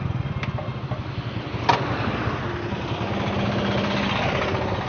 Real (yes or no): yes